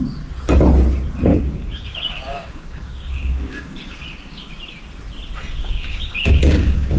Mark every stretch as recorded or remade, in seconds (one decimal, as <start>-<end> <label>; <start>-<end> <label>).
0.0-1.3 recorded; 1.3-4.5 remade; 4.5-5.6 recorded; 5.6-7.0 remade